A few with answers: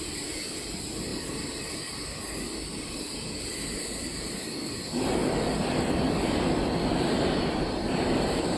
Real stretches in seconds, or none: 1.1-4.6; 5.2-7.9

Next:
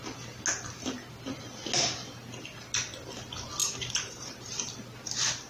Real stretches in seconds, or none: 0.0-3.6; 4.7-5.5

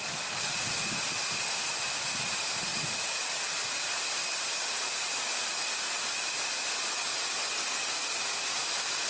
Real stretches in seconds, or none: 0.0-2.7; 5.7-9.1